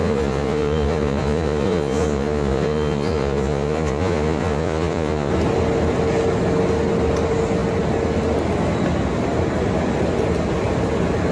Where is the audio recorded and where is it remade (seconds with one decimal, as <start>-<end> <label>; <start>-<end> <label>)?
0.0-5.3 remade; 5.3-11.3 recorded